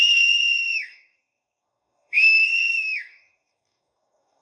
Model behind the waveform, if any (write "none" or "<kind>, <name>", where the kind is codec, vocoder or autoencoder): codec, DAC